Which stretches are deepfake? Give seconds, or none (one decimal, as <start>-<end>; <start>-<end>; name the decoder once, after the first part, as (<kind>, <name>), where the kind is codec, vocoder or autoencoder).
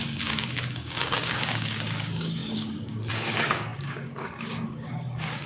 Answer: 0.0-5.5 (codec, DAC)